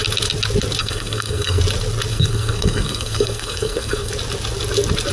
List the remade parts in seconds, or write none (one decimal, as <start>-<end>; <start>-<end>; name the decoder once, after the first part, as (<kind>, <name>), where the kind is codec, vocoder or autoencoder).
0.8-1.6 (codec, SNAC); 2.1-4.1